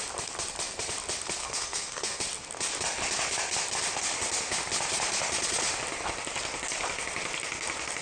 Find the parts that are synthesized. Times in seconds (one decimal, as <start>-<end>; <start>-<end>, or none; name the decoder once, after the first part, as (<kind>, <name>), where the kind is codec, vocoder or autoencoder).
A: 1.4-2.2 (codec, SNAC)